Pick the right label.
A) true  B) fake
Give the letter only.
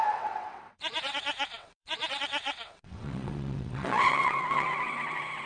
B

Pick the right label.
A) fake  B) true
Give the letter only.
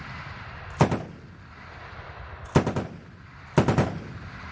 B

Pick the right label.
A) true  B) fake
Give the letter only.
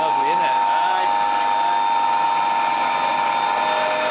A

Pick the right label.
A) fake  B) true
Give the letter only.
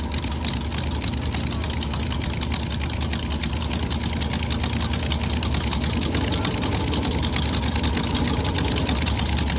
B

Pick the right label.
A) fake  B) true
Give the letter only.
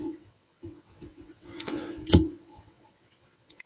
A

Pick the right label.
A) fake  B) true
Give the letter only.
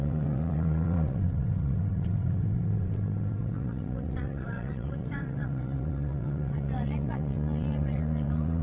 A